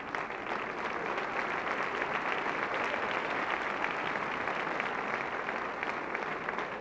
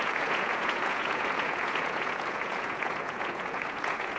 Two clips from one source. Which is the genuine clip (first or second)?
first